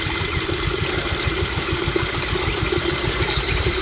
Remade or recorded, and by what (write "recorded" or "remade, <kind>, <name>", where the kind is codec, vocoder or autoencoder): remade, vocoder, BigVGAN v2